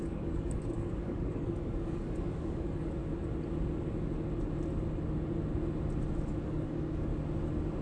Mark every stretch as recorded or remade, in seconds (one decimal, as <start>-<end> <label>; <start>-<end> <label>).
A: 0.0-3.0 remade; 3.0-6.4 recorded; 6.4-7.1 remade; 7.1-7.8 recorded